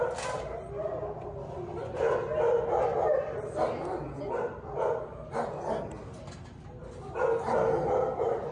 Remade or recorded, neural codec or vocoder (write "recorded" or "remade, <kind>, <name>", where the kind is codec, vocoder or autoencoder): recorded